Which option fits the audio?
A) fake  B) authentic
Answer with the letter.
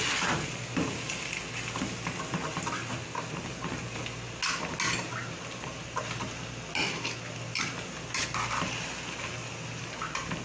B